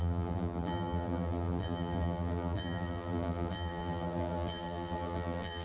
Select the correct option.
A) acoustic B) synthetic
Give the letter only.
B